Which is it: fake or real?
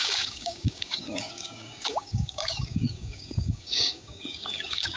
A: fake